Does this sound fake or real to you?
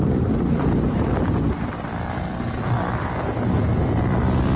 fake